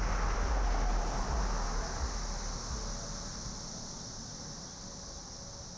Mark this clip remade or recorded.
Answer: recorded